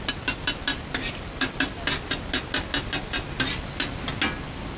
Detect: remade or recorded recorded